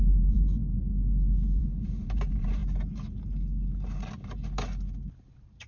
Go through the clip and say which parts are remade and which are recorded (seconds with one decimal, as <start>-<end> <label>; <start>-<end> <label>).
0.0-0.6 remade; 0.6-1.6 recorded; 1.6-2.6 remade; 2.6-5.1 recorded; 5.1-5.7 remade